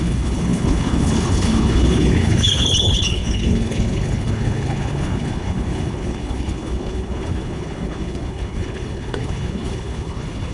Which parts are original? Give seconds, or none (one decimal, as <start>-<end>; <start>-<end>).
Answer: none